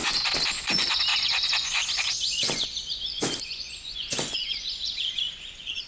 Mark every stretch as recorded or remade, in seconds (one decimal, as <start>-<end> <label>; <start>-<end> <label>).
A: 0.0-0.6 recorded; 0.6-5.9 remade